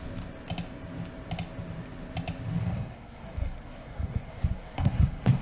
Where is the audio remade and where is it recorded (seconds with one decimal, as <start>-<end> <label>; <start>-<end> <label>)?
0.0-2.7 recorded; 2.7-5.4 remade